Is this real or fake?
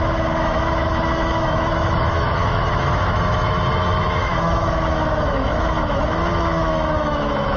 fake